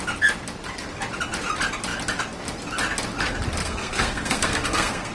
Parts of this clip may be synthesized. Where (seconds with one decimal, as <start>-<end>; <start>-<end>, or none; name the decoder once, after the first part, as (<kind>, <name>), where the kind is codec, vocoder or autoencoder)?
3.6-5.1 (codec, SNAC)